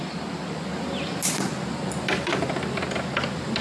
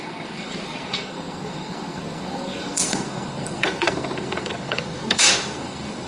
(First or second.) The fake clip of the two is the second